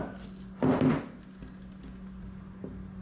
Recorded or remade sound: recorded